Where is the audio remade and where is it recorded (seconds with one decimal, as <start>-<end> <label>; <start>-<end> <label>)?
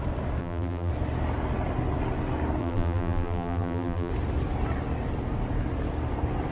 0.0-0.4 recorded; 0.4-0.9 remade; 0.9-2.6 recorded; 2.6-4.1 remade; 4.1-6.5 recorded